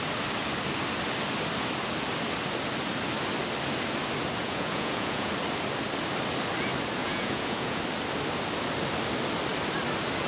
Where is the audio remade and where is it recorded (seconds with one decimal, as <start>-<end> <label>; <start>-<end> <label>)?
0.0-4.4 recorded; 4.4-5.3 remade; 5.3-7.0 recorded; 7.0-7.8 remade; 7.8-10.3 recorded